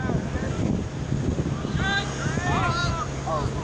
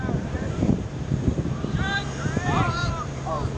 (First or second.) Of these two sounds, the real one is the first